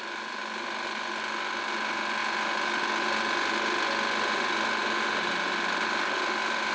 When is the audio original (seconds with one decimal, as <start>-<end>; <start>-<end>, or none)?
0.0-6.7